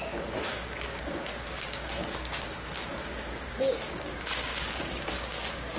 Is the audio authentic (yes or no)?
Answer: no